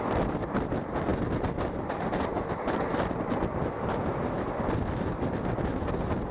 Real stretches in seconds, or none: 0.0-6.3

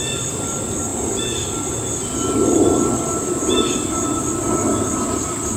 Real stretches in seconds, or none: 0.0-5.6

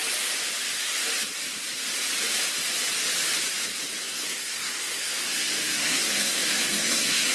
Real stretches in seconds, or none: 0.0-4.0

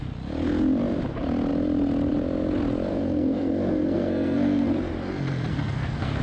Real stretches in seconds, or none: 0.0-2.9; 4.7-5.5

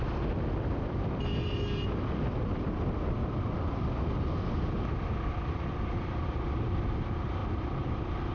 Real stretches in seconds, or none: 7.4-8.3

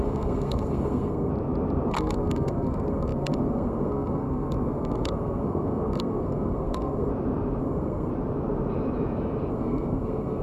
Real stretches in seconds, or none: 1.3-1.9; 7.1-7.6; 8.1-9.5

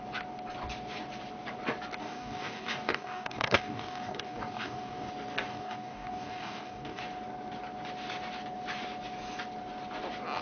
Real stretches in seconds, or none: 0.0-2.0; 5.1-5.5; 7.0-10.4